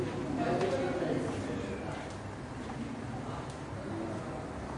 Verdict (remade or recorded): recorded